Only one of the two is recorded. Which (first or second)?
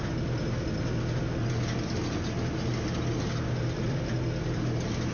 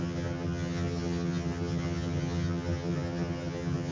first